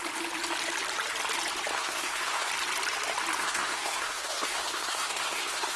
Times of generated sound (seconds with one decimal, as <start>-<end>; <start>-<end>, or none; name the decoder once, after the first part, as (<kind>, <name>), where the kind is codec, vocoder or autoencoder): 1.7-2.5 (codec, SNAC); 3.4-5.8